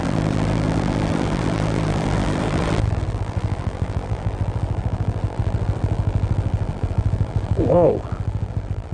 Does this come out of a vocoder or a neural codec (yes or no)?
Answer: yes